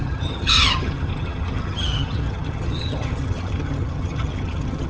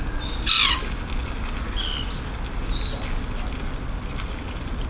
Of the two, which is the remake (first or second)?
first